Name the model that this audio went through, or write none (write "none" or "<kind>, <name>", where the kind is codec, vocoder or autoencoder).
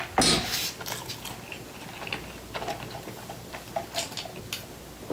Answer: none